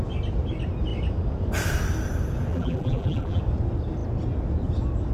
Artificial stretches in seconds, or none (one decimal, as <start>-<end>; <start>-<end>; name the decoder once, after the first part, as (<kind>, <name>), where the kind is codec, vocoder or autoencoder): 2.5-3.4 (vocoder, BigVGAN v2)

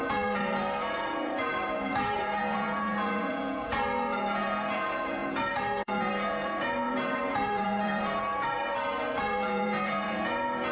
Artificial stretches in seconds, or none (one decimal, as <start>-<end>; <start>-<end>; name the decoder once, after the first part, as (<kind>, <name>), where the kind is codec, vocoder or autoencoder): 0.0-10.7 (vocoder, Vocos)